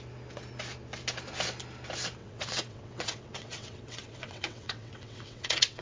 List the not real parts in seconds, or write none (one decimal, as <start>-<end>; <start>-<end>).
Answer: 2.2-5.8